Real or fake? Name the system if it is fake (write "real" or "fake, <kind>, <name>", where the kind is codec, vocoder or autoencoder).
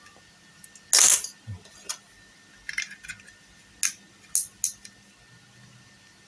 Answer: real